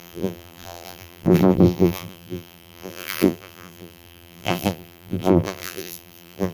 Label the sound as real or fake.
fake